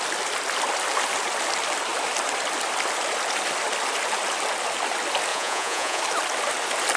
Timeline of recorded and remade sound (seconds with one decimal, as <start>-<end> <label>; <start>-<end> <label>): 0.0-5.3 recorded; 5.3-6.0 remade; 6.0-7.0 recorded